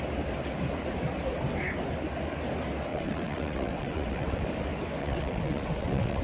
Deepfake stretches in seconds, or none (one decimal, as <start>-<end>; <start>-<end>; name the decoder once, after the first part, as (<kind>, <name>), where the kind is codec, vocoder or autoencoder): 2.9-4.4 (vocoder, WaveNeXt); 5.0-6.2